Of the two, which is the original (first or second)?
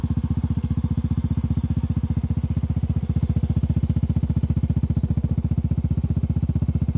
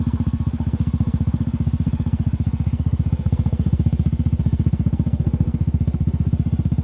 first